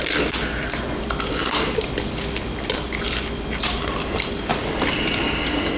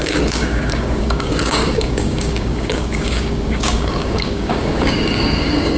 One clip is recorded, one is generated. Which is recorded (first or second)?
first